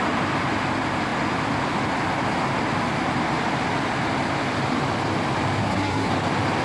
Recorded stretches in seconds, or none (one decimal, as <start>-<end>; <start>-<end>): 0.0-5.6; 6.1-6.6